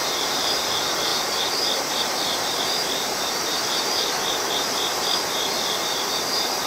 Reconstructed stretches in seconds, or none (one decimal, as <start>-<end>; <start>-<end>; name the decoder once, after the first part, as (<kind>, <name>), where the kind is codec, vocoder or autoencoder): 0.0-6.7 (vocoder, BigVGAN v2)